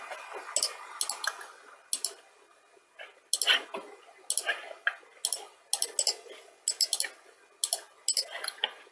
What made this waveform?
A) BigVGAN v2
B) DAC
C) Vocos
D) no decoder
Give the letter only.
D